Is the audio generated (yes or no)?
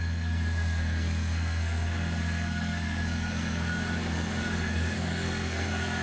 yes